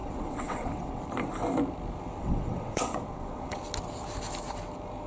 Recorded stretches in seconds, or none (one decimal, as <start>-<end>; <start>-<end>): 1.0-2.2; 3.6-5.1